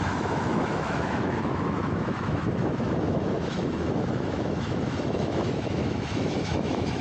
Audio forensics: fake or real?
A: fake